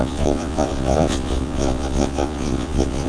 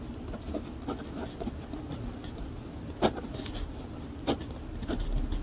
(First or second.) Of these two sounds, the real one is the second